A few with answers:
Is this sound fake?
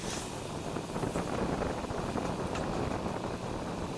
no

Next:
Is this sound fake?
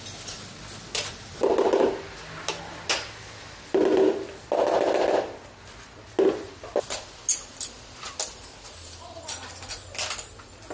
no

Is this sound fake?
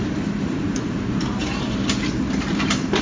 yes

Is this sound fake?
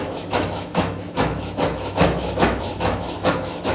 yes